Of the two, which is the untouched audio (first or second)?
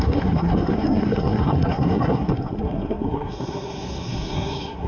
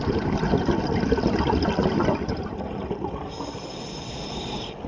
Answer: second